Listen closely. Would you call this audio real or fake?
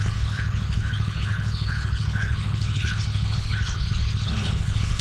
fake